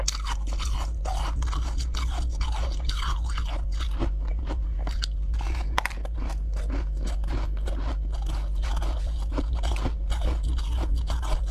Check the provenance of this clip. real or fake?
real